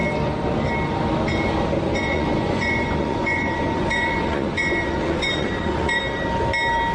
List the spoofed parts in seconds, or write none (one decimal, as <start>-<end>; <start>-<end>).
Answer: 1.9-6.0

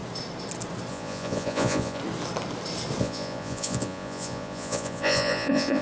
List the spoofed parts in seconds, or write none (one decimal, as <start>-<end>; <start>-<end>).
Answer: 0.9-2.0; 3.0-5.8

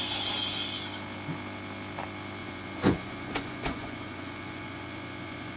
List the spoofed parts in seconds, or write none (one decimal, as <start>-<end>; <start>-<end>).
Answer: 2.4-5.6